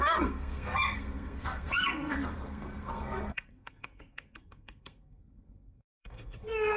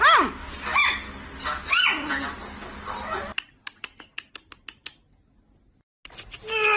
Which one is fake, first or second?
first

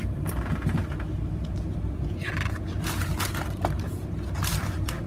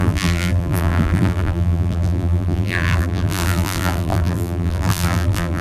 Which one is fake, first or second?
second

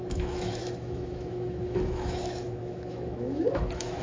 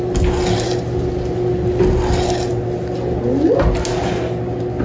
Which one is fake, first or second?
first